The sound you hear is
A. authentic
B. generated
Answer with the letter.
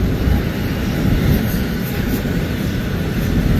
A